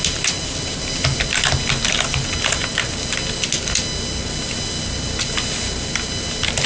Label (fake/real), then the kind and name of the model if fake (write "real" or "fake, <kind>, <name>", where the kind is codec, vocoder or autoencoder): real